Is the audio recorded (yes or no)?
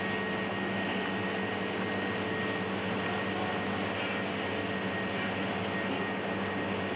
yes